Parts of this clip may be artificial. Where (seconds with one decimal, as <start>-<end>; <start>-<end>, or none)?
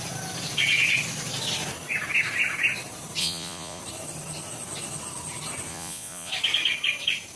3.2-3.8; 5.7-6.3